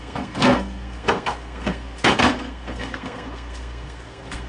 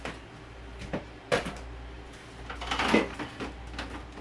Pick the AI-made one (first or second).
first